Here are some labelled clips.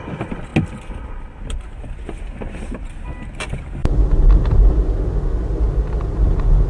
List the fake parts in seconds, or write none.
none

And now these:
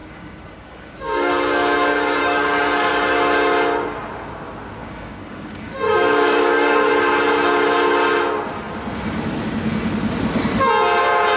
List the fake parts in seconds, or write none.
0.0-1.3 (codec, DAC); 2.2-2.9; 4.8-6.9

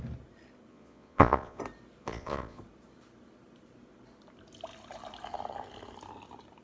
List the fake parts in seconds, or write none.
0.7-1.6 (vocoder, Vocos); 2.0-2.6

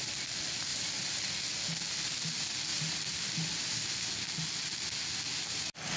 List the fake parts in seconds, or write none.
0.7-1.3 (vocoder, BigVGAN v2); 2.7-4.1